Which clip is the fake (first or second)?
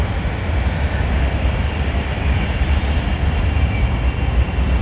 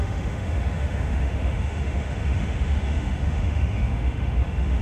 second